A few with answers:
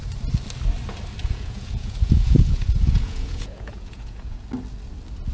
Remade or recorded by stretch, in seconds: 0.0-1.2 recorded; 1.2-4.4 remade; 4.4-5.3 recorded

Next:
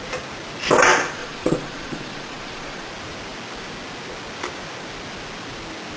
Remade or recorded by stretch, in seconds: 0.0-1.2 recorded; 1.2-2.9 remade; 2.9-6.0 recorded

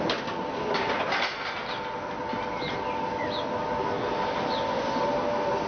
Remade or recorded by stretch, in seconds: 0.0-5.7 recorded

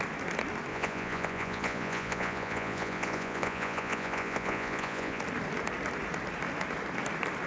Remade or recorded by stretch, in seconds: 0.0-0.7 recorded; 0.7-5.2 remade; 5.2-7.5 recorded

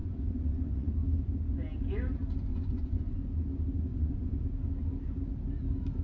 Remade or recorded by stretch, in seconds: 0.0-0.9 remade; 0.9-2.5 recorded; 2.5-3.2 remade; 3.2-3.9 recorded; 3.9-4.4 remade; 4.4-6.0 recorded

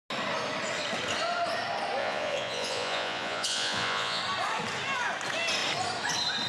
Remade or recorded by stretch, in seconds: 0.0-2.0 recorded; 2.0-4.2 remade; 4.2-6.5 recorded

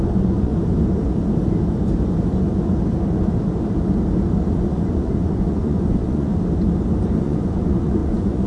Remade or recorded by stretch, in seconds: 0.0-0.5 remade; 0.5-4.5 recorded; 4.5-6.3 remade; 6.3-7.2 recorded; 7.2-8.5 remade